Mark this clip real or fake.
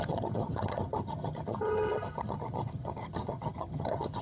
fake